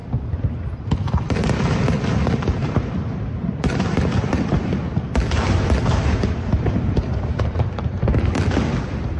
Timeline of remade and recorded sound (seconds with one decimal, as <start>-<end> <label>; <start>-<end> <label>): 0.0-2.6 recorded; 2.6-4.0 remade; 4.0-5.9 recorded; 5.9-8.2 remade; 8.2-9.2 recorded